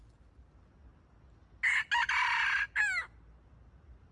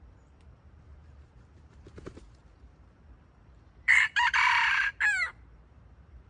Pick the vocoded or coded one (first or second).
second